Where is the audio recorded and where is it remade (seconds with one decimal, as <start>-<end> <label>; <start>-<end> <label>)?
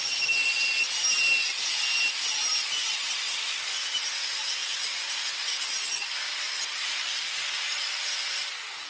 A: 0.0-8.9 recorded